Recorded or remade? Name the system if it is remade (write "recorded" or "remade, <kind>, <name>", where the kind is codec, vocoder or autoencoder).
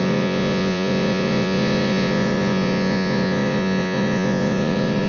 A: remade, vocoder, Vocos